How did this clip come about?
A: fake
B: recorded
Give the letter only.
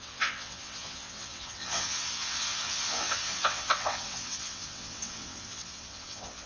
A